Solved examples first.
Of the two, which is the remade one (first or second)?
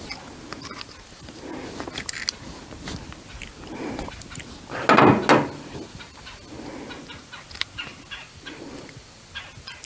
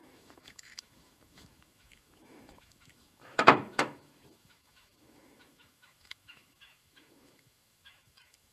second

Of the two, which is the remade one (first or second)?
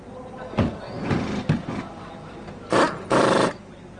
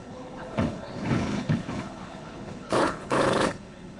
second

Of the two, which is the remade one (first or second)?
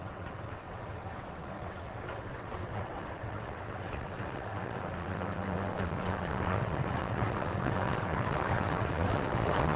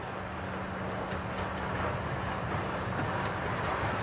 first